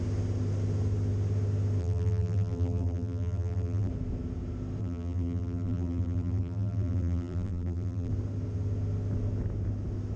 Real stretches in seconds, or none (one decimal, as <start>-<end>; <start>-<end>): 0.0-1.8; 3.9-4.8; 8.1-10.2

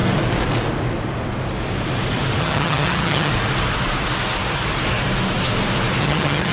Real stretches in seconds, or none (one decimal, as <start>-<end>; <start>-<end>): 0.0-2.4; 3.3-6.0